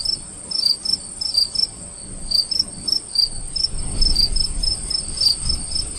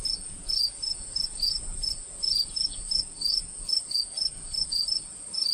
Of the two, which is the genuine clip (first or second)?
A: first